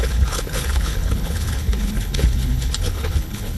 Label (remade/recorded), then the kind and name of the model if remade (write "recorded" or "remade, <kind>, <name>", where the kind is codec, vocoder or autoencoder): remade, codec, HILCodec